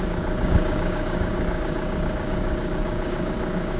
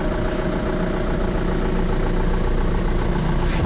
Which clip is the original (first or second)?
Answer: second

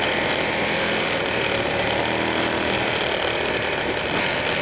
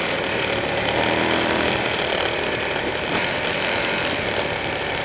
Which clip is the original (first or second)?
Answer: first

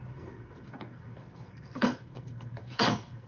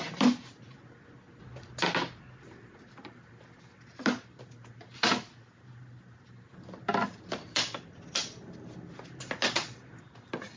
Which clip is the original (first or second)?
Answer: second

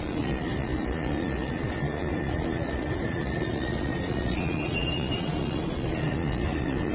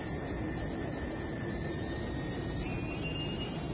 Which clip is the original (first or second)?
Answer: second